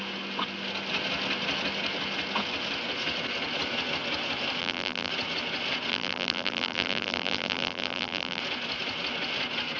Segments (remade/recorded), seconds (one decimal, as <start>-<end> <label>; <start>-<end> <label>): 0.0-4.6 recorded; 4.6-5.1 remade; 5.1-5.9 recorded; 5.9-8.4 remade; 8.4-9.8 recorded